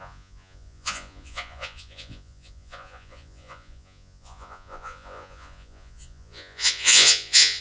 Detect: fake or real fake